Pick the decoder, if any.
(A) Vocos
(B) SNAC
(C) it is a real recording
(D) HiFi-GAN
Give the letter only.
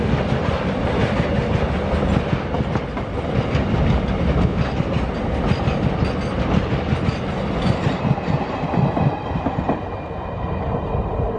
C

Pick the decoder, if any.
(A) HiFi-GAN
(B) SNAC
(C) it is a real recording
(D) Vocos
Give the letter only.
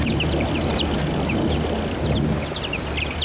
C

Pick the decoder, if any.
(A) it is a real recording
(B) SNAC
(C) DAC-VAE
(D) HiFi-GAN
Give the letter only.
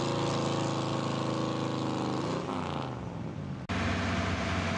A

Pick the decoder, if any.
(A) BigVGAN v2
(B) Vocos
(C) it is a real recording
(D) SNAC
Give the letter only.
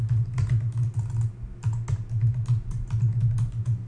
C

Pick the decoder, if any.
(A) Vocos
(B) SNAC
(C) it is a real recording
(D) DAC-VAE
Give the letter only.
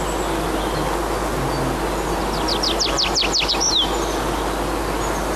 C